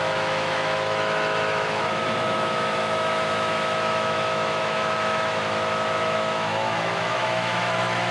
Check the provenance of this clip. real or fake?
fake